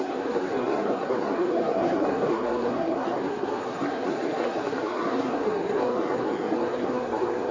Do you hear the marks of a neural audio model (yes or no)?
yes